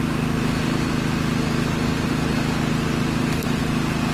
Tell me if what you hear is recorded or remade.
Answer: recorded